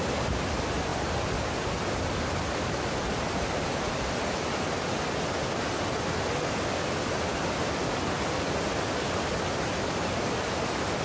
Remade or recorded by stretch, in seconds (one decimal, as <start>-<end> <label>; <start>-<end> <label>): 0.0-11.0 recorded